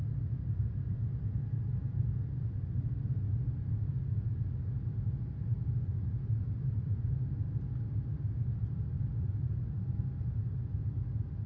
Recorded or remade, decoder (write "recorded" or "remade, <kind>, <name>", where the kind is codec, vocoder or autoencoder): recorded